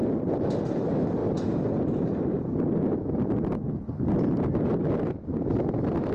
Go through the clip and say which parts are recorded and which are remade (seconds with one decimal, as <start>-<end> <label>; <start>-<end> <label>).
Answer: 0.0-6.1 recorded